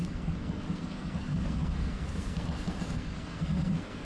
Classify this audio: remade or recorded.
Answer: remade